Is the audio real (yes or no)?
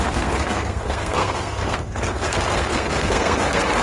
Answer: no